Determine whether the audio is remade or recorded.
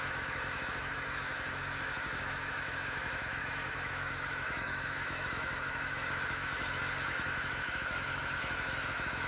remade